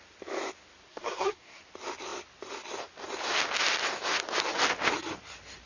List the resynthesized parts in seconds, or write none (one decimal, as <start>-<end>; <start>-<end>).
0.9-1.6